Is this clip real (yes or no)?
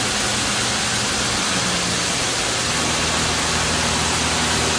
yes